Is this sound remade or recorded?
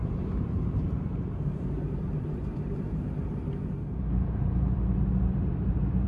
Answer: remade